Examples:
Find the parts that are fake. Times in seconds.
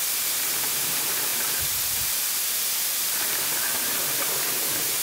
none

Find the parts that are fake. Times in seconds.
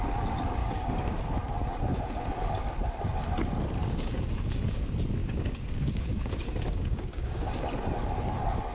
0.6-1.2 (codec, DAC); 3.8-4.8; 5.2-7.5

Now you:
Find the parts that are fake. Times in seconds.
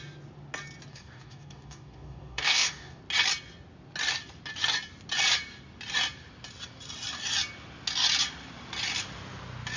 0.9-3.0 (codec, DAC)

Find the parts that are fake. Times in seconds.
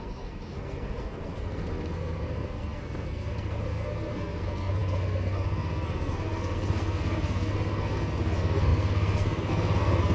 0.0-10.1 (codec, SNAC)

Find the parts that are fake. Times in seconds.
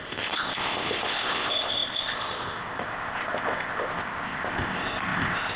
0.0-5.6 (codec, ZipCodec)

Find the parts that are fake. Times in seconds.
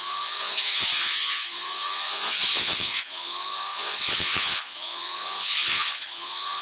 0.0-6.6 (vocoder, Vocos)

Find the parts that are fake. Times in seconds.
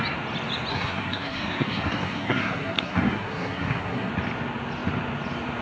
0.7-4.1 (codec, SNAC)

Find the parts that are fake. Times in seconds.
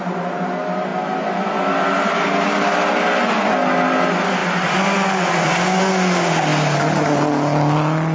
none